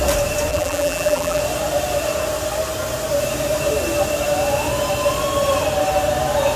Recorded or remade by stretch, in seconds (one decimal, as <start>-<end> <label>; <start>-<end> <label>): 0.0-0.5 recorded; 0.5-1.4 remade; 1.4-6.6 recorded